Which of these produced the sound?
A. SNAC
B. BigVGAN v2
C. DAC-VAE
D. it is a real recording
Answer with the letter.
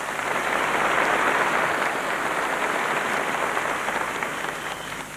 D